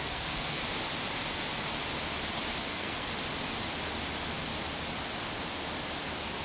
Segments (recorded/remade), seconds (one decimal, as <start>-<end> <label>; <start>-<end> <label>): 0.0-0.6 remade; 0.6-2.6 recorded; 2.6-3.1 remade; 3.1-6.4 recorded